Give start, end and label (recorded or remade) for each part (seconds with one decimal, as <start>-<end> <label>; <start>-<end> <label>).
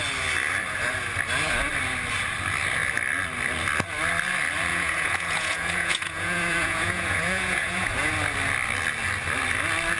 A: 0.0-4.7 recorded; 4.7-7.9 remade; 7.9-10.0 recorded